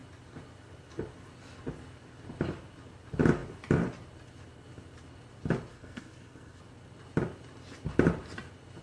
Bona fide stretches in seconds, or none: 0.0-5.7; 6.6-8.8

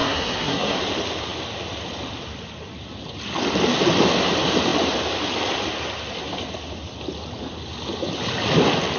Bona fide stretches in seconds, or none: 0.8-9.0

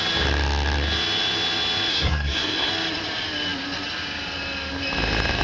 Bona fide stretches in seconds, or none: 0.0-1.9; 2.7-5.4

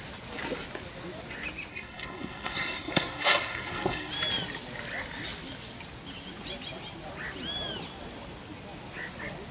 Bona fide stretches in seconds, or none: 0.0-1.7; 4.1-9.5

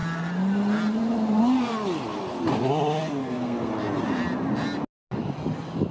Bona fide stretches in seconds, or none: 0.0-3.2; 3.7-5.9